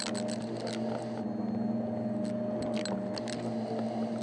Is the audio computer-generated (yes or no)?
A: no